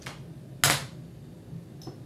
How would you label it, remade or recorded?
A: recorded